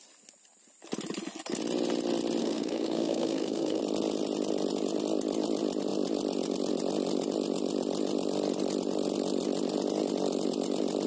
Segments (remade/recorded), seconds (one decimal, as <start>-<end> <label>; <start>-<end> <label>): 0.0-2.4 recorded; 2.4-3.8 remade; 3.8-11.1 recorded